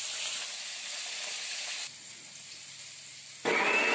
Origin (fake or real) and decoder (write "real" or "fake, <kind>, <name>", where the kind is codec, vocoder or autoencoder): real